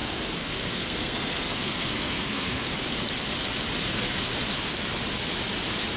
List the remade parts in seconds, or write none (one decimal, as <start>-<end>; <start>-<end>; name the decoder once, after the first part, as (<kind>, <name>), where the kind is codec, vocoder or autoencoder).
0.0-2.7 (codec, SNAC); 3.8-4.3